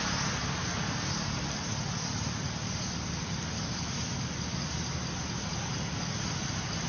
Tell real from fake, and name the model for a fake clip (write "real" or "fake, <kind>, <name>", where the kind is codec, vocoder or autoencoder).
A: real